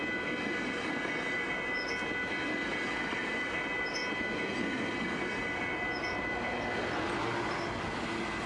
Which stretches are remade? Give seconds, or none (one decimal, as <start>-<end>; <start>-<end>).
none